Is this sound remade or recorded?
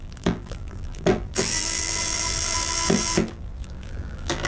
remade